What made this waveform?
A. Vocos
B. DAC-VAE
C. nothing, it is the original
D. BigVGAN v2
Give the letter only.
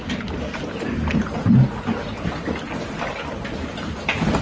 C